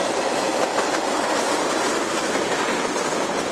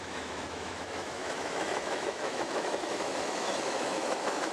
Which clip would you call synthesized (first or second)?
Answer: second